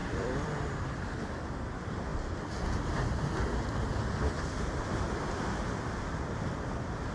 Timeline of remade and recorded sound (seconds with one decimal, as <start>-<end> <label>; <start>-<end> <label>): 0.0-1.5 remade; 1.5-7.1 recorded